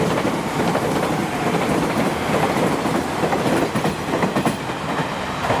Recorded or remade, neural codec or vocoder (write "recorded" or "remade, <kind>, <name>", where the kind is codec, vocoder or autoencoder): recorded